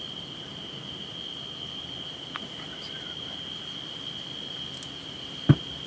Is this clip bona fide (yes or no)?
yes